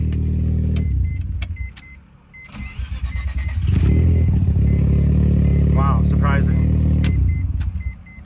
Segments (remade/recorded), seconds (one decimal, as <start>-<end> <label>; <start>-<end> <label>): 0.0-8.3 recorded